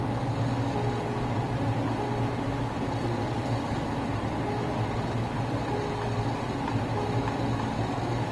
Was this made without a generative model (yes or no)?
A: yes